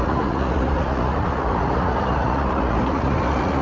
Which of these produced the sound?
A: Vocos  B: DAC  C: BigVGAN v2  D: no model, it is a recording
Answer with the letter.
A